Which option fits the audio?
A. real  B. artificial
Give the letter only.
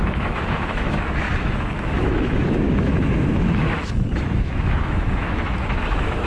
B